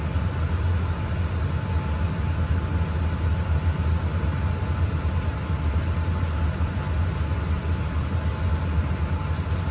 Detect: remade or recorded recorded